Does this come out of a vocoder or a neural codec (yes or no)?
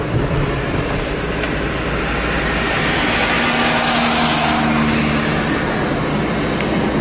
no